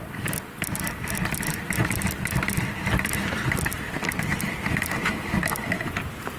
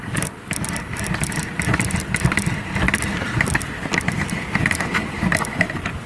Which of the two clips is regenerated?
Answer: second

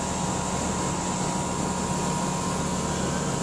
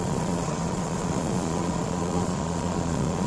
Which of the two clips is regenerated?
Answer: second